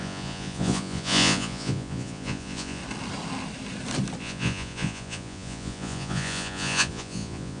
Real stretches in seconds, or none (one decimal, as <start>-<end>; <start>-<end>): 2.8-4.2